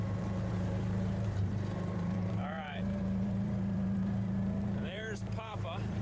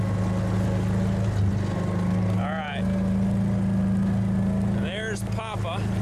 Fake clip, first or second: first